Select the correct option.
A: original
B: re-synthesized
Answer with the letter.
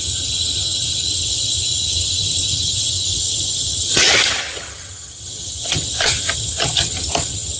B